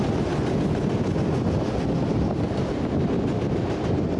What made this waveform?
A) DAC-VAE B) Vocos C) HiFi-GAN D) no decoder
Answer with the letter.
D